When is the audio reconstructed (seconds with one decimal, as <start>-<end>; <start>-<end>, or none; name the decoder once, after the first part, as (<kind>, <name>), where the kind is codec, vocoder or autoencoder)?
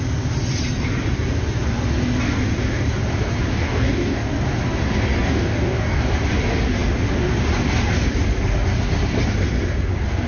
3.5-4.4 (codec, DAC); 5.1-6.0